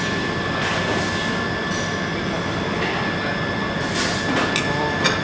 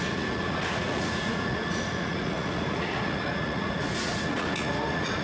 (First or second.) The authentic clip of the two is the first